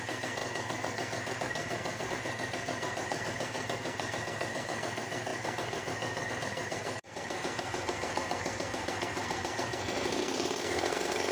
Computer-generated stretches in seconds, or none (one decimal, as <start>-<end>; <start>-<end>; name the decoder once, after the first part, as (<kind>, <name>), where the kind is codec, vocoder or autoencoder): 0.0-11.3 (codec, SNAC)